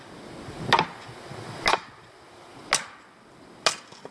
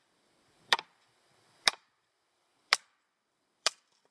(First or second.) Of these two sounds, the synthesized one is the second